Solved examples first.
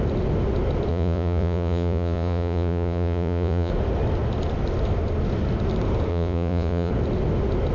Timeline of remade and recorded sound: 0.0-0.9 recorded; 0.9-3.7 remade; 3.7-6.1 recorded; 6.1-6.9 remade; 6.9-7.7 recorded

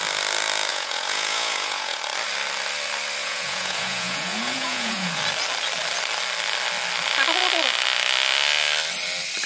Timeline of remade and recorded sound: 0.0-0.7 recorded; 0.7-2.0 remade; 2.0-3.2 recorded; 3.2-5.2 remade; 5.2-9.5 recorded

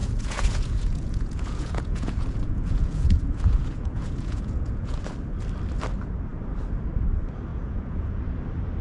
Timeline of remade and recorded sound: 0.0-5.0 remade; 5.0-7.5 recorded; 7.5-8.2 remade; 8.2-8.8 recorded

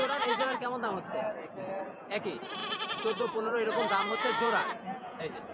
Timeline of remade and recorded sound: 0.0-5.5 remade

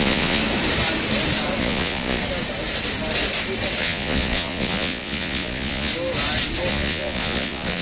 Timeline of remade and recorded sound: 0.0-0.4 remade; 0.4-1.6 recorded; 1.6-2.2 remade; 2.2-3.8 recorded; 3.8-5.9 remade; 5.9-6.7 recorded; 6.7-7.8 remade

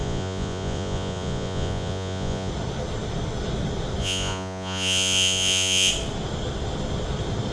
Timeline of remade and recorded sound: 0.0-2.5 remade; 2.5-4.0 recorded; 4.0-5.9 remade; 5.9-7.5 recorded